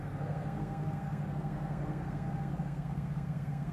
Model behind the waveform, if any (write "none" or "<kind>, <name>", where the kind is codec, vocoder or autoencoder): codec, SNAC